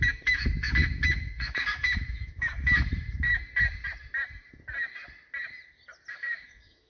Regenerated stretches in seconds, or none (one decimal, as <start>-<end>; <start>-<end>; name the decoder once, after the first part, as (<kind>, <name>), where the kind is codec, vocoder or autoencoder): 0.0-3.3 (autoencoder, DAC-VAE); 6.1-6.9